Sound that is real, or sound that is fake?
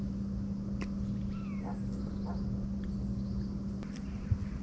real